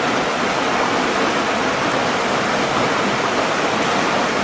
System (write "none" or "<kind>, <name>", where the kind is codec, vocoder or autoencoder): none